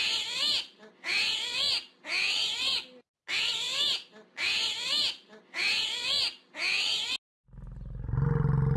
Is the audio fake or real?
real